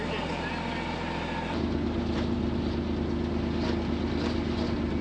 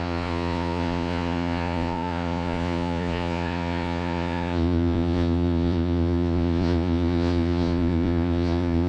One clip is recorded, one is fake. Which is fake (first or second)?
second